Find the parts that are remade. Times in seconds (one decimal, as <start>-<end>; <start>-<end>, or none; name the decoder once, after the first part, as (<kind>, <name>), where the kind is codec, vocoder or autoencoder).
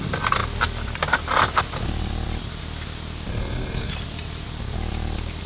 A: 3.3-3.9 (codec, SNAC)